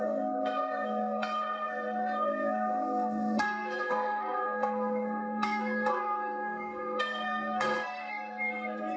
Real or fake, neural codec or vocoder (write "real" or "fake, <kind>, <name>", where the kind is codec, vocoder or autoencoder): fake, codec, SNAC